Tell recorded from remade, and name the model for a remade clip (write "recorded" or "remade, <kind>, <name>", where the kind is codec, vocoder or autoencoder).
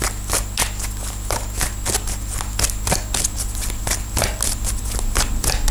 recorded